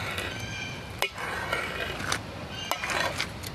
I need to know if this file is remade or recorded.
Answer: recorded